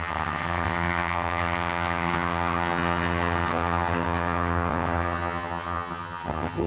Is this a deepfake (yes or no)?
yes